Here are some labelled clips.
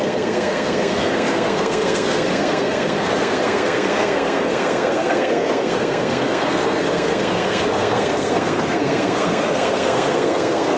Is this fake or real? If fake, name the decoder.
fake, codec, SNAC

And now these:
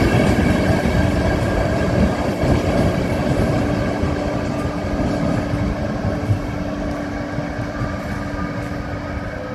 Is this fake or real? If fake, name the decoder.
real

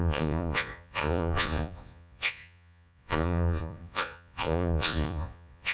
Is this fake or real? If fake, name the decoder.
fake, vocoder, Vocos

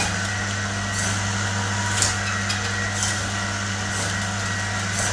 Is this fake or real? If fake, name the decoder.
real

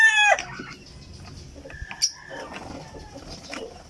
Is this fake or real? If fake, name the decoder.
real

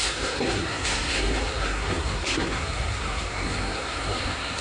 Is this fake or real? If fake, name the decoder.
fake, codec, SNAC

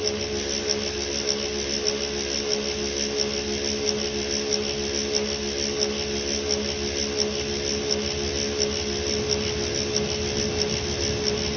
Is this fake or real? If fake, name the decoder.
real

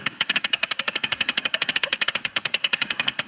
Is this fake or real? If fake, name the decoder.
fake, codec, DAC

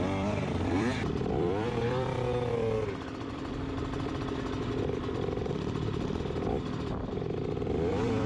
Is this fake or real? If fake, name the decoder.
fake, vocoder, BigVGAN v2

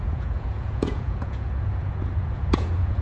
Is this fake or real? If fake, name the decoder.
fake, vocoder, Vocos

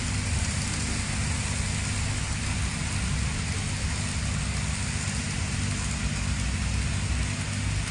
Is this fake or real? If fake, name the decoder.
real